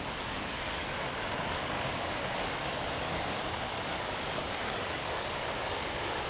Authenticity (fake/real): fake